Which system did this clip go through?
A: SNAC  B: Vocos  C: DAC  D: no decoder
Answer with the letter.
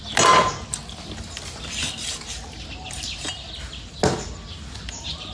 D